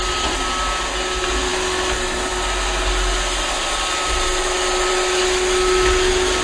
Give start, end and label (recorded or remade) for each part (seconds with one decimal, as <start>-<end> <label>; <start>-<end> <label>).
0.0-6.4 recorded